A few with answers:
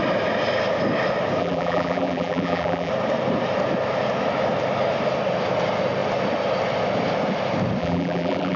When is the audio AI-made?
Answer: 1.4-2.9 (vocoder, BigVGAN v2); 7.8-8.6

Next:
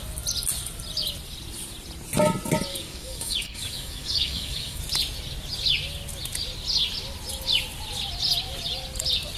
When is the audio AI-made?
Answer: 2.7-4.8 (codec, DAC)